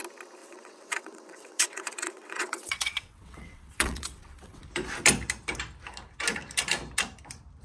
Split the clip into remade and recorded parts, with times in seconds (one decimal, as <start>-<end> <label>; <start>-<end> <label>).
0.0-0.4 recorded; 0.4-4.6 remade; 4.6-7.6 recorded